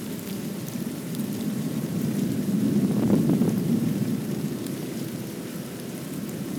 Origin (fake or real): fake